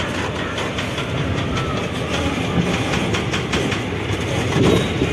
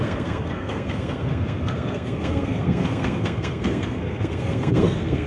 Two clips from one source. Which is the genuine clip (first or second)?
first